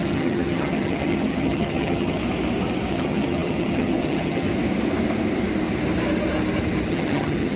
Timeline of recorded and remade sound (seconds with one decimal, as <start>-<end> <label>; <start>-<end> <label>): 0.0-2.2 remade; 2.2-2.9 recorded; 2.9-4.5 remade; 4.5-6.9 recorded; 6.9-7.6 remade